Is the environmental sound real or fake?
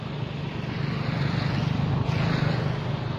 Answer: real